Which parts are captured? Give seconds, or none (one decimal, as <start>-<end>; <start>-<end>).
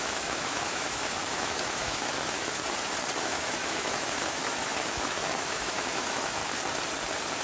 2.6-3.2; 6.4-7.4